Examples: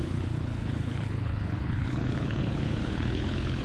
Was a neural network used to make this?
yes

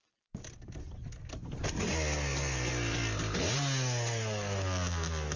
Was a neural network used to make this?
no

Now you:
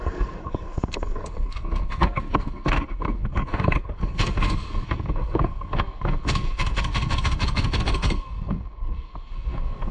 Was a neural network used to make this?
yes